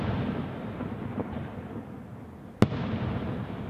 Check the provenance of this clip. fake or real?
real